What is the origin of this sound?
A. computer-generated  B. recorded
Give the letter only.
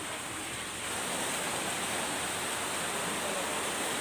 B